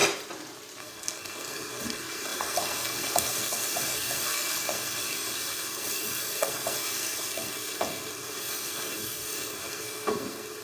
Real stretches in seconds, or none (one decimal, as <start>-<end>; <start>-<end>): 0.0-0.8